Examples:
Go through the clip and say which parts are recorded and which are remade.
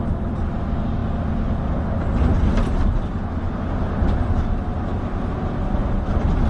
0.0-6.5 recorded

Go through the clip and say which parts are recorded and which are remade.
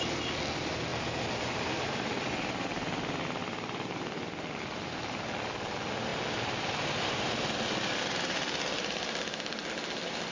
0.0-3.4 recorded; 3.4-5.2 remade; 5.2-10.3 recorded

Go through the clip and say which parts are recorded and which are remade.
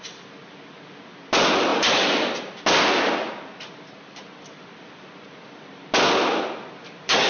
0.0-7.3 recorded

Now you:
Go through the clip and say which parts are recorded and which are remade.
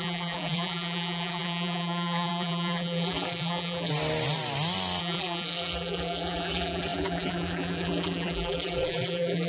0.0-3.9 remade; 3.9-5.0 recorded; 5.0-9.5 remade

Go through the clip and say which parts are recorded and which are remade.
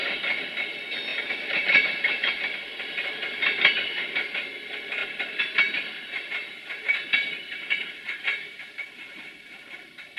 0.0-1.1 recorded; 1.1-2.4 remade; 2.4-5.0 recorded; 5.0-10.2 remade